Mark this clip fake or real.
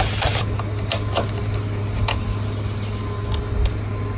real